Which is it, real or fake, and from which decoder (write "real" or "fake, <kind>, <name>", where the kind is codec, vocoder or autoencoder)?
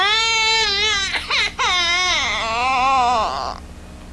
real